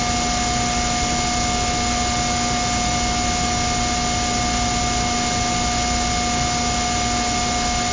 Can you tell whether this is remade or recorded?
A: recorded